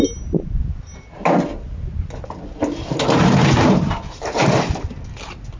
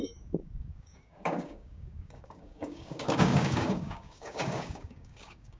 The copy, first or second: second